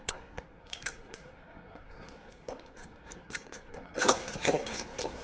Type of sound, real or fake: fake